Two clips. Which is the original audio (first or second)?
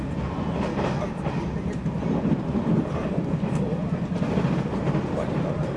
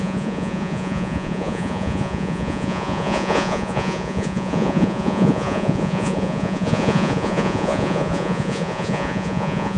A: first